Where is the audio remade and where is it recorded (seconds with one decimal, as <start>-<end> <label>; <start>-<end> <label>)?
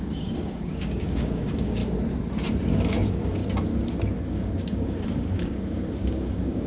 0.0-1.8 remade; 1.8-2.9 recorded; 2.9-3.4 remade; 3.4-4.3 recorded; 4.3-6.7 remade